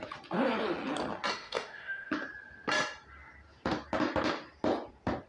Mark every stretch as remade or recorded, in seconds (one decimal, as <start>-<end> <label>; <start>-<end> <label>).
0.0-1.3 recorded; 1.3-2.1 remade; 2.1-5.3 recorded